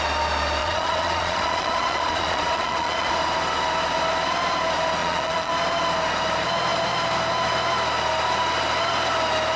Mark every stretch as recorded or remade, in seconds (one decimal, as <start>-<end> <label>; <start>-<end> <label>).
0.0-0.6 recorded; 0.6-3.1 remade; 3.1-5.0 recorded; 5.0-5.5 remade; 5.5-9.6 recorded